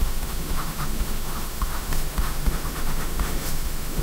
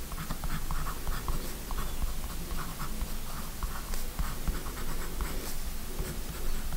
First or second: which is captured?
second